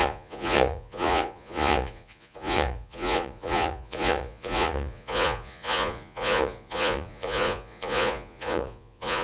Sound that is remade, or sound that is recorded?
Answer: remade